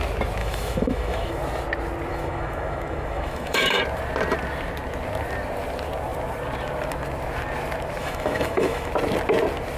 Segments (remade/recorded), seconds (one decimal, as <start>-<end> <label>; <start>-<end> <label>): 0.0-0.4 recorded; 0.4-1.4 remade; 1.4-2.1 recorded; 2.1-3.8 remade; 3.8-8.0 recorded; 8.0-8.9 remade; 8.9-9.8 recorded